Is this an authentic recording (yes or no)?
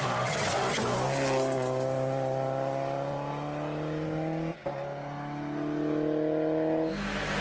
yes